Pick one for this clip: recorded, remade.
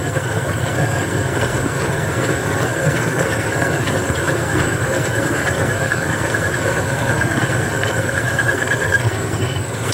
remade